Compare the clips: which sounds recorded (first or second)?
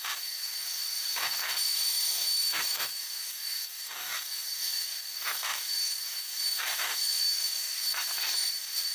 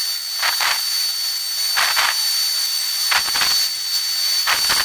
second